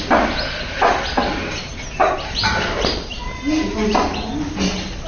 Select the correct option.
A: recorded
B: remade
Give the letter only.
A